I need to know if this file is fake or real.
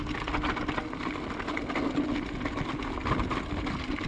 real